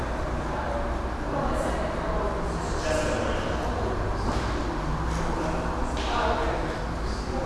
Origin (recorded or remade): recorded